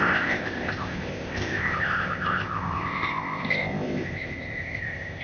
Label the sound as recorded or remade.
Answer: remade